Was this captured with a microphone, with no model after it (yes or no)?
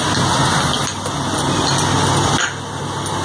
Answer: yes